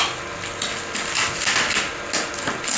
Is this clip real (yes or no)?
yes